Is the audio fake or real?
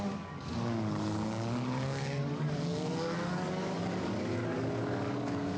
fake